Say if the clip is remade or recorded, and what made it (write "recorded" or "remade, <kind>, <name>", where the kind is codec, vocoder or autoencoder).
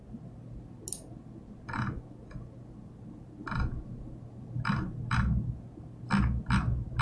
recorded